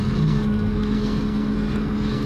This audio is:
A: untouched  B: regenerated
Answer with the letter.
B